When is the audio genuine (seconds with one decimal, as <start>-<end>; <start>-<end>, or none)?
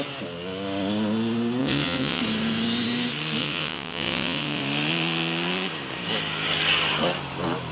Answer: 0.0-1.6; 2.2-3.4; 4.6-7.7